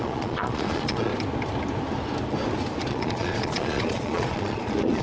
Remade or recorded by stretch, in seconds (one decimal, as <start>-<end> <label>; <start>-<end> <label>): 0.0-1.1 remade; 1.1-2.9 recorded; 2.9-5.0 remade